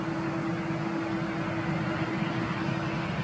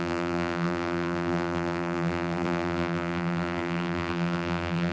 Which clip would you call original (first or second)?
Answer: first